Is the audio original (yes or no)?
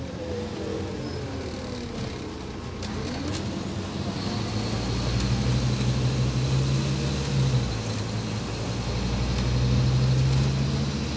yes